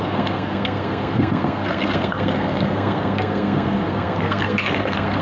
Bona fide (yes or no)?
no